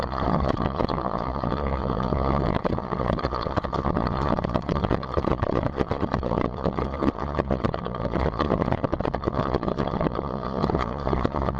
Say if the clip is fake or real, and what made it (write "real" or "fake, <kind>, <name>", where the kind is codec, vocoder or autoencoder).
fake, vocoder, Vocos